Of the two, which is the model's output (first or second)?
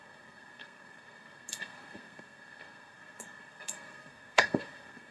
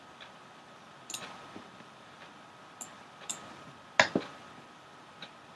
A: first